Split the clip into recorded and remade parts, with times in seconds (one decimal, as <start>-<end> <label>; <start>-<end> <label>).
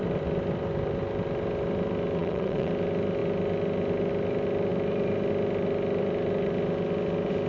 0.0-2.2 recorded; 2.2-2.7 remade; 2.7-7.5 recorded